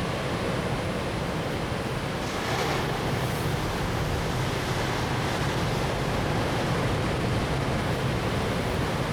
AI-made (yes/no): no